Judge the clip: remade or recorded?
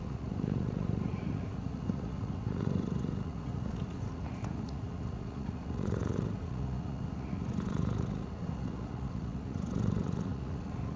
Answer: remade